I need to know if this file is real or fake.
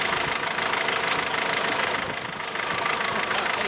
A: real